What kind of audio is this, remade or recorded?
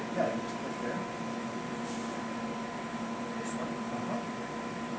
recorded